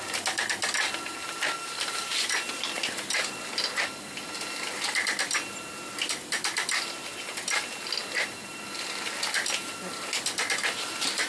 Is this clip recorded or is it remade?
recorded